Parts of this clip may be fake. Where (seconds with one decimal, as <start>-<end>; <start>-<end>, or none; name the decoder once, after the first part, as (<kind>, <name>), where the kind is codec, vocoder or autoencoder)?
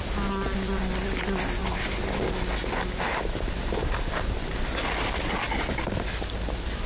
none